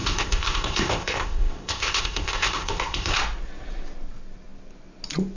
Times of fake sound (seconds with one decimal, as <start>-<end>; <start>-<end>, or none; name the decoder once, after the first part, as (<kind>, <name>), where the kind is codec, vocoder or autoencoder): 0.0-3.2 (codec, ZipCodec)

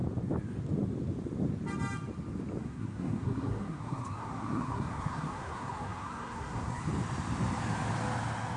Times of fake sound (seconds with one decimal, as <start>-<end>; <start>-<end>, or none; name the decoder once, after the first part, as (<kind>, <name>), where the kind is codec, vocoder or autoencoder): 2.6-6.8 (codec, SNAC)

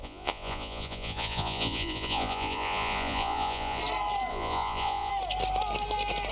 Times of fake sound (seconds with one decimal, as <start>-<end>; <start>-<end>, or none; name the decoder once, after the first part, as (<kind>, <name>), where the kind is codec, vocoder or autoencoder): 0.0-3.8 (vocoder, Vocos); 4.3-5.1

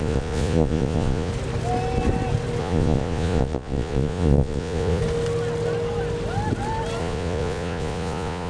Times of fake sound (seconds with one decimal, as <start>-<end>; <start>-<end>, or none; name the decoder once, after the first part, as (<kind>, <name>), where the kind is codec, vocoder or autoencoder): 0.0-1.3 (vocoder, Vocos); 2.6-5.0; 7.0-8.5